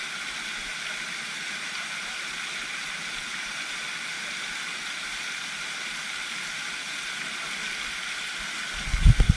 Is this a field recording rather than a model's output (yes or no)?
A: yes